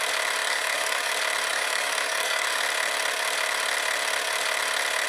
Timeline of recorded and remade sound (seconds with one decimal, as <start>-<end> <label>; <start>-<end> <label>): 0.0-0.4 recorded; 0.4-1.1 remade; 1.1-1.5 recorded; 1.5-2.6 remade; 2.6-5.1 recorded